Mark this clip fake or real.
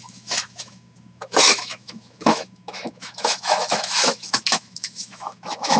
fake